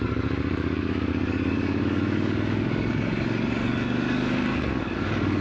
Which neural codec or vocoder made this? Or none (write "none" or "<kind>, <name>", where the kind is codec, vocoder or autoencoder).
codec, DAC